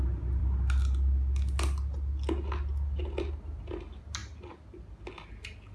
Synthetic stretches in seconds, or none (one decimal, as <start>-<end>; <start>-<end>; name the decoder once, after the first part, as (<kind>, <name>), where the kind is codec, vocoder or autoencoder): none